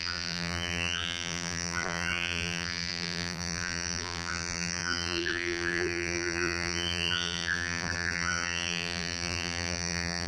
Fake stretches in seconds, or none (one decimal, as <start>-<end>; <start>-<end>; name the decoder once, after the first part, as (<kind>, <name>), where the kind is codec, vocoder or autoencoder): 0.0-10.3 (vocoder, BigVGAN v2)